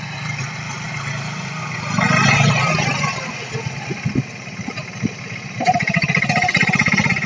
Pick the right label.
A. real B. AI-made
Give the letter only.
A